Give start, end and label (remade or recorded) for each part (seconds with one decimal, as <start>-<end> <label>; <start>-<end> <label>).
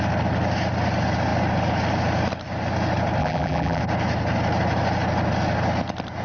0.0-3.2 recorded; 3.2-3.8 remade; 3.8-6.2 recorded